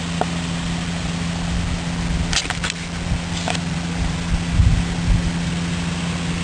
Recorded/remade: recorded